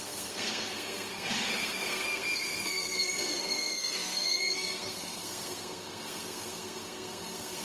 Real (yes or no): no